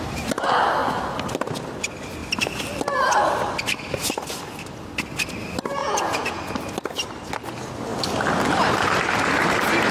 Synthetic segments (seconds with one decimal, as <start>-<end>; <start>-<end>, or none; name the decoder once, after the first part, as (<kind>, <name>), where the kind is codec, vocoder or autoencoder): 5.8-6.4 (vocoder, Vocos)